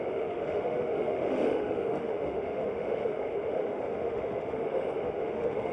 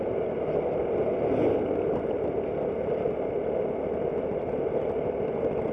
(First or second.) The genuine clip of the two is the second